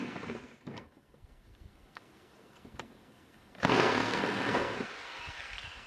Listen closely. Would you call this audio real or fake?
fake